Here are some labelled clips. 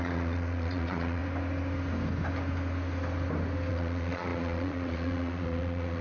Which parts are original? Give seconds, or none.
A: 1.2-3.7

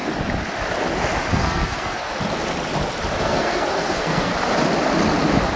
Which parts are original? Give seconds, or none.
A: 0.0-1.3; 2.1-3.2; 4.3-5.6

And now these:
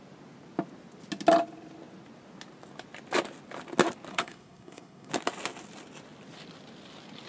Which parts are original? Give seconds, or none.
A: 0.0-4.1; 5.1-7.3